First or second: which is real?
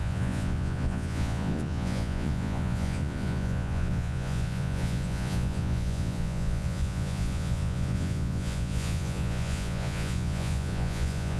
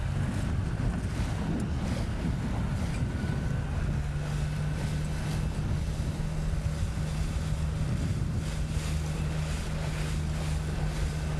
second